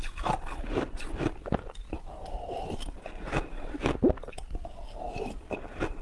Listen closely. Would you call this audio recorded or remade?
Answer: recorded